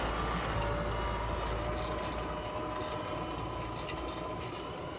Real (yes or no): yes